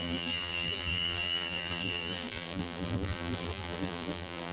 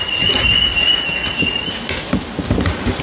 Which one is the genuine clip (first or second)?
second